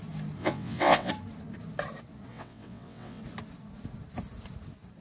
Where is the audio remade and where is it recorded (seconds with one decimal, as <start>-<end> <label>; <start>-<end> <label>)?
0.0-0.4 recorded; 0.4-1.1 remade; 1.1-2.3 recorded; 2.3-3.2 remade; 3.2-5.0 recorded